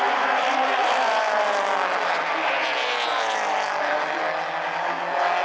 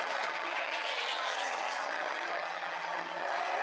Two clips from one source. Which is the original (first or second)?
first